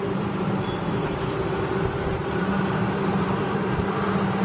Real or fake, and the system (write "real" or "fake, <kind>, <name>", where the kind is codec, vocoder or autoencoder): fake, vocoder, BigVGAN v2